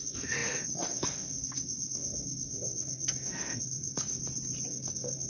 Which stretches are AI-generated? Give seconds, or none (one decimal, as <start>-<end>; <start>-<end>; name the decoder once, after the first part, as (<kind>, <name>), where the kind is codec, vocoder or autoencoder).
0.0-4.1 (codec, SNAC); 4.7-5.3